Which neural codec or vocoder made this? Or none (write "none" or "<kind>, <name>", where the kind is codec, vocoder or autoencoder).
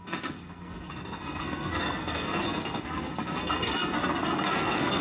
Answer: codec, SNAC